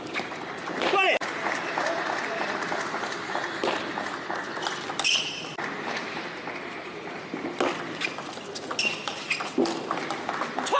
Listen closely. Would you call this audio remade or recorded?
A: recorded